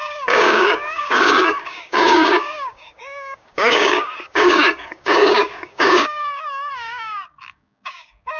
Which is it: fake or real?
fake